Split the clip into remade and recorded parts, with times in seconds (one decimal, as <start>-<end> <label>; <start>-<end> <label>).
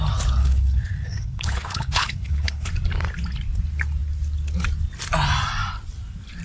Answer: 0.0-0.4 recorded; 0.4-2.7 remade; 2.7-6.4 recorded